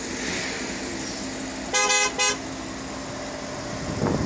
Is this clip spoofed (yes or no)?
no